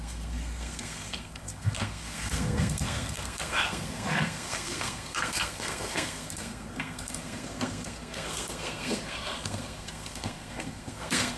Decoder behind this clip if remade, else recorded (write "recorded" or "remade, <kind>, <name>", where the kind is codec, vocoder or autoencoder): remade, codec, SNAC